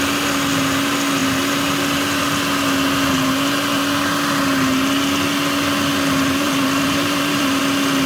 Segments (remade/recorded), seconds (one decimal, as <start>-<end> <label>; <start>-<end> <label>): 0.0-5.9 recorded; 5.9-7.6 remade; 7.6-8.1 recorded